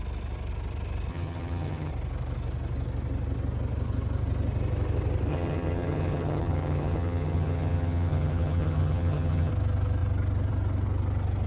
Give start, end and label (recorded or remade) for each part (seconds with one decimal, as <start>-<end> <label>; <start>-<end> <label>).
0.0-1.1 recorded; 1.1-1.9 remade; 1.9-5.3 recorded; 5.3-9.5 remade; 9.5-11.5 recorded